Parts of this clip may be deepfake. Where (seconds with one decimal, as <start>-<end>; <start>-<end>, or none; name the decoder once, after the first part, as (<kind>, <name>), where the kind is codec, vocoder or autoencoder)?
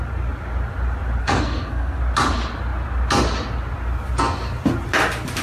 1.2-2.0 (codec, SNAC)